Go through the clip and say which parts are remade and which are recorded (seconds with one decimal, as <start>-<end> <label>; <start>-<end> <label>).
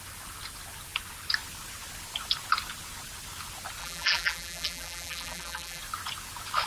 0.0-3.8 recorded; 3.8-5.8 remade; 5.8-6.7 recorded